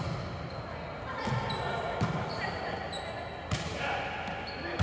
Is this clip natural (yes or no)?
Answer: yes